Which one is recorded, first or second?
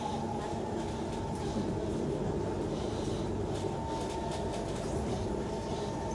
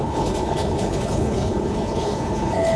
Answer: first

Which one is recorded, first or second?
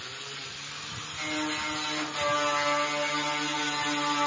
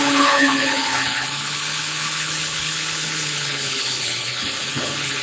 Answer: first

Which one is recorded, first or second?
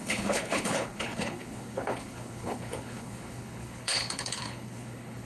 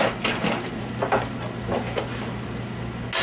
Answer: second